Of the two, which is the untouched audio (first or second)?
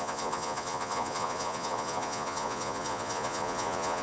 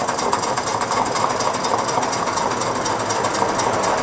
second